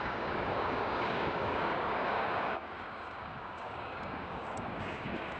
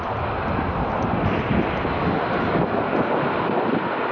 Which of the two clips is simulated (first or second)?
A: first